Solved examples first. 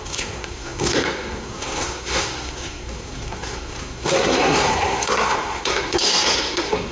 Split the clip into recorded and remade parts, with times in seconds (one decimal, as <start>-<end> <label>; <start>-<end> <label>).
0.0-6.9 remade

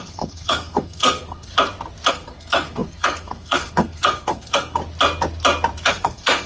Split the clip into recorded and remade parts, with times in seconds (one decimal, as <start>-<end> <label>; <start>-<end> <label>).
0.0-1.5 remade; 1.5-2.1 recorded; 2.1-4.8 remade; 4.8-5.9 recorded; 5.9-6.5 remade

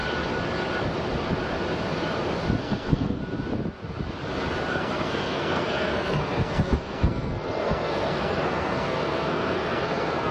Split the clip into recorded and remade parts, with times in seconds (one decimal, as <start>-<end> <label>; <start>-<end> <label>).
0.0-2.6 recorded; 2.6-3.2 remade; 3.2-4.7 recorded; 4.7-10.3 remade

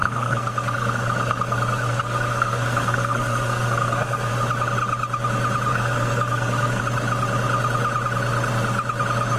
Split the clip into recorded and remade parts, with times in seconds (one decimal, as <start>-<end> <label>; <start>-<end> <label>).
0.0-4.3 remade; 4.3-5.7 recorded; 5.7-6.8 remade; 6.8-9.4 recorded

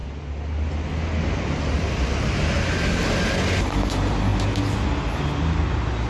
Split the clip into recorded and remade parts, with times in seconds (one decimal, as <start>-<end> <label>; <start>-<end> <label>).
0.0-6.1 recorded

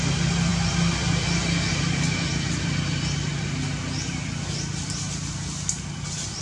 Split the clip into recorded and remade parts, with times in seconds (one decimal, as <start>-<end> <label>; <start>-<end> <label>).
0.0-6.4 recorded

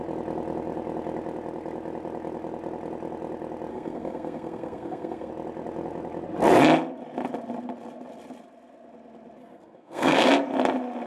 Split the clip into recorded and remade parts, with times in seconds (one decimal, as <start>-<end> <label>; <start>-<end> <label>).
0.0-3.7 recorded; 3.7-5.3 remade; 5.3-9.4 recorded; 9.4-10.3 remade; 10.3-11.1 recorded